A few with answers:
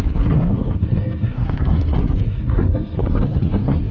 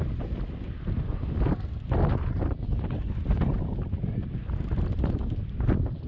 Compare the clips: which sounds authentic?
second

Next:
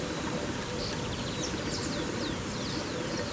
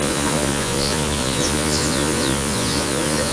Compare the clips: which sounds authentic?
first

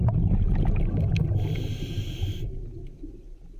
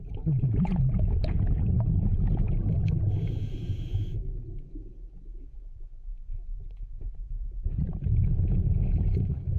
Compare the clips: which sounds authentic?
first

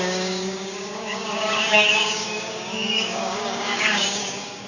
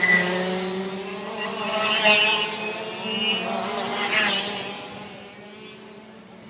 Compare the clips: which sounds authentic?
second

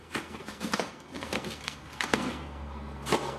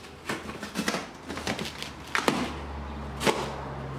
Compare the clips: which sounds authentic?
second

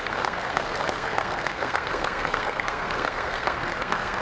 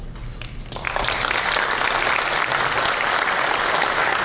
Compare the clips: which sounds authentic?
second